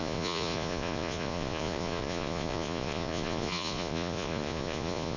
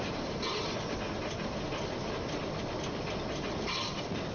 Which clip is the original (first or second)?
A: second